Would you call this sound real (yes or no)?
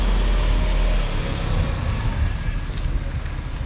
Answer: yes